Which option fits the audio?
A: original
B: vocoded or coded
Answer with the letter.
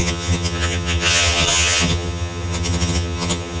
B